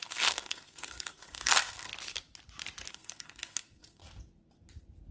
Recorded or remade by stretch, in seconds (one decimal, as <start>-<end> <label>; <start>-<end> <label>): 0.0-1.9 remade; 1.9-2.9 recorded; 2.9-4.0 remade; 4.0-5.1 recorded